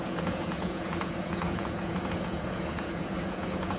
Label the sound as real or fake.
fake